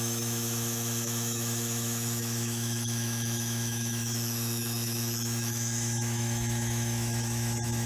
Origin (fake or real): fake